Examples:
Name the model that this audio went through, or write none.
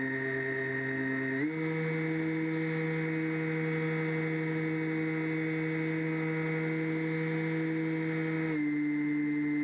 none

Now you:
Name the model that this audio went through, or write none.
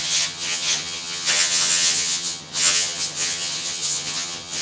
vocoder, HiFi-GAN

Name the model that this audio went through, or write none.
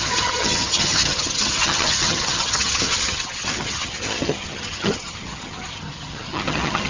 vocoder, HiFi-GAN